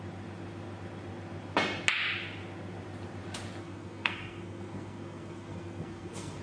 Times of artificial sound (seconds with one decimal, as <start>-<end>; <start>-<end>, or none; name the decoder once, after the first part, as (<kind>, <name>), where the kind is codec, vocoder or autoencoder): 3.6-6.4 (codec, SNAC)